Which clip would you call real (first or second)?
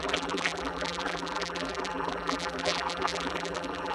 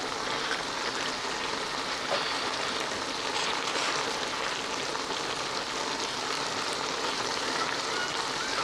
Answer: second